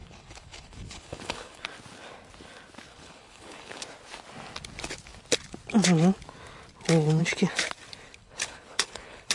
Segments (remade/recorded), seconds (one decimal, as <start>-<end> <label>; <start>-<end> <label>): 0.0-1.6 remade; 1.6-2.9 recorded; 2.9-3.8 remade; 3.8-8.2 recorded; 8.2-9.3 remade